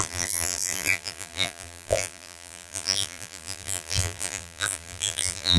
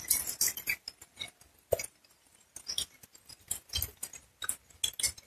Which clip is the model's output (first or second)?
first